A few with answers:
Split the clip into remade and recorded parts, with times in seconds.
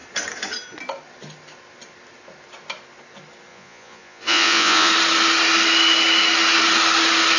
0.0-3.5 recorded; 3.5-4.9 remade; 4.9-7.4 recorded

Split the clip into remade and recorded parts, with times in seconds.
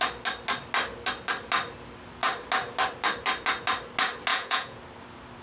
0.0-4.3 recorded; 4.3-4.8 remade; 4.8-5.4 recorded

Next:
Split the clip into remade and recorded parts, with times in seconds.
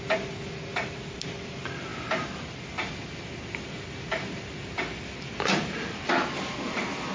0.0-7.1 recorded